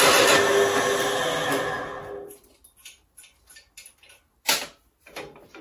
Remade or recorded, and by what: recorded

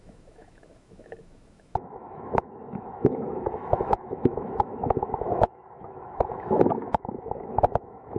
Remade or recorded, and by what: remade, autoencoder, DAC-VAE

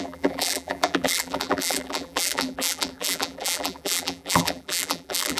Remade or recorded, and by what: remade, vocoder, BigVGAN v2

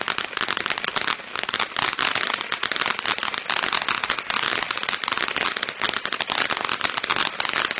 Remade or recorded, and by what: recorded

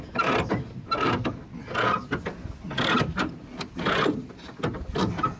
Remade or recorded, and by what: recorded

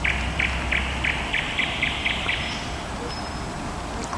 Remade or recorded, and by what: recorded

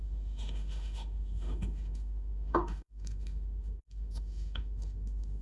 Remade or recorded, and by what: remade, autoencoder, DAC-VAE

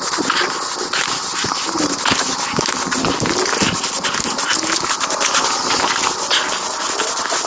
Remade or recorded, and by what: recorded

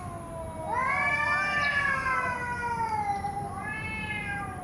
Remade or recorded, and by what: recorded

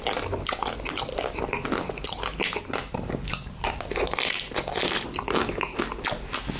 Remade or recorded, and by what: recorded